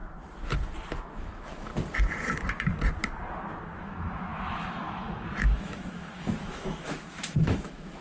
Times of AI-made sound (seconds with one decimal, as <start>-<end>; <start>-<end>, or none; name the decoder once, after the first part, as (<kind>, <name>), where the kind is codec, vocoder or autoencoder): 1.0-1.7 (autoencoder, DAC-VAE); 3.8-8.0